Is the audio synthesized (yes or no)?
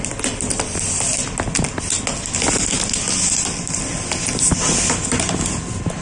no